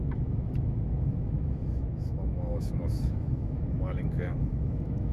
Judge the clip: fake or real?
fake